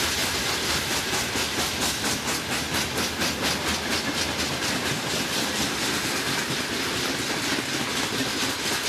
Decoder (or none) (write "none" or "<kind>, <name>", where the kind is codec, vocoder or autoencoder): none